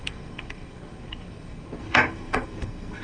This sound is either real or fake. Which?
fake